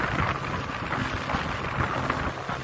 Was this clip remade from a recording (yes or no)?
no